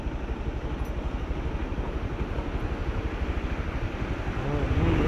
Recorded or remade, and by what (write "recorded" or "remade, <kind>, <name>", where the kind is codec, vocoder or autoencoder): recorded